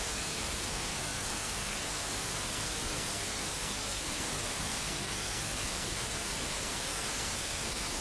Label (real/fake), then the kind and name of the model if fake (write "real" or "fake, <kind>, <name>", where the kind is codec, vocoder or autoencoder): fake, codec, SNAC